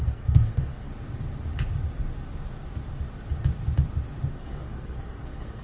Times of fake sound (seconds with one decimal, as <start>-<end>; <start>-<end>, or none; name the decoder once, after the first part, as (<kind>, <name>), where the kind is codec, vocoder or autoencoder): 0.0-0.9 (codec, SNAC); 4.3-5.6